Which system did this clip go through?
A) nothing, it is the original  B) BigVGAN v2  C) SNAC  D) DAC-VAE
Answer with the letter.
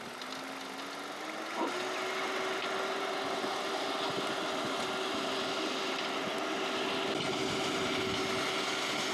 A